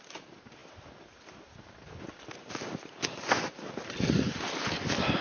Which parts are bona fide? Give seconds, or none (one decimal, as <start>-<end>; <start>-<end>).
0.0-5.2